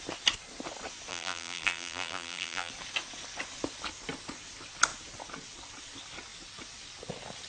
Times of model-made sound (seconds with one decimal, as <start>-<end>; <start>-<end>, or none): 1.1-2.7